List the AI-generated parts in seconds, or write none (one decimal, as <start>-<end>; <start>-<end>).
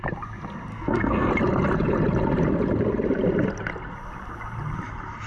0.7-1.3